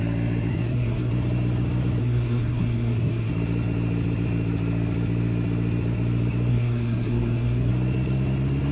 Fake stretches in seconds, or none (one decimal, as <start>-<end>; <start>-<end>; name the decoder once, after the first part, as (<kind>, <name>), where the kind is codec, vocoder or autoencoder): 0.5-1.1 (codec, SNAC); 2.0-3.3; 6.5-7.7